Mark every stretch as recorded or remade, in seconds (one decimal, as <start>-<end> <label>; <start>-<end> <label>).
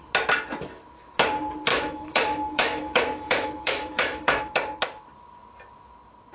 0.0-1.7 recorded; 1.7-4.5 remade; 4.5-6.3 recorded